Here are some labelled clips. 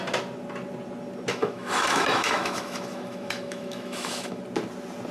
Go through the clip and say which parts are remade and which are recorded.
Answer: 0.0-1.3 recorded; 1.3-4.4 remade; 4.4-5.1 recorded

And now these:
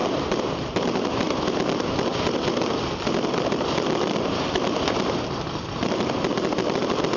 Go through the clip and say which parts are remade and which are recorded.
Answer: 0.0-0.8 remade; 0.8-2.1 recorded; 2.1-6.4 remade; 6.4-7.2 recorded

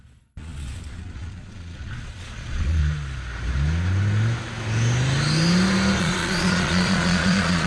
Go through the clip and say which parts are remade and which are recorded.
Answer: 0.0-2.8 remade; 2.8-6.0 recorded; 6.0-7.7 remade

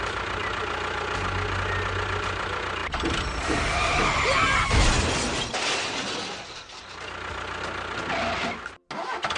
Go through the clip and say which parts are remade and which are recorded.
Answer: 0.0-9.4 recorded

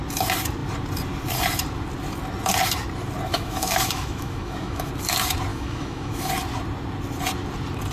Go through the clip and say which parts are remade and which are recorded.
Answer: 0.0-3.3 recorded; 3.3-4.9 remade; 4.9-5.5 recorded; 5.5-6.3 remade; 6.3-7.9 recorded

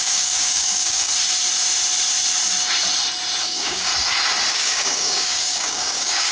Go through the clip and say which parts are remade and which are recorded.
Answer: 0.0-1.1 remade; 1.1-3.4 recorded; 3.4-3.9 remade; 3.9-4.5 recorded; 4.5-6.3 remade

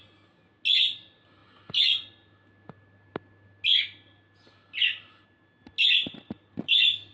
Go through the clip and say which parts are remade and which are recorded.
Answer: 0.0-7.1 recorded